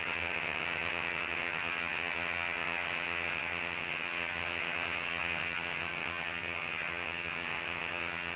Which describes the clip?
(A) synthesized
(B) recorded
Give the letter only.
A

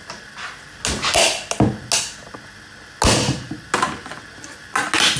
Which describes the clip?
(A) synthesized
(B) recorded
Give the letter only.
B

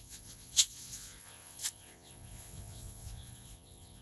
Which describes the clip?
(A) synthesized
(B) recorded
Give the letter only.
A